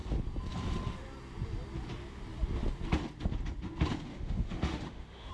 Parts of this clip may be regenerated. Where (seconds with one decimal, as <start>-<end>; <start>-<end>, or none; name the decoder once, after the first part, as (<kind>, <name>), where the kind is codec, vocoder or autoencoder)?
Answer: 4.1-5.3 (autoencoder, DAC-VAE)